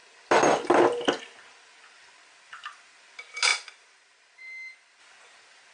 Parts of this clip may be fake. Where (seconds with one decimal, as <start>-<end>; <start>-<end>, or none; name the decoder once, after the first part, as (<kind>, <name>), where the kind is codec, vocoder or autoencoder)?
none